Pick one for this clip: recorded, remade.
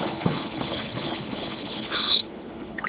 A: remade